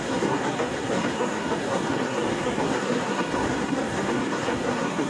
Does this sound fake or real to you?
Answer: fake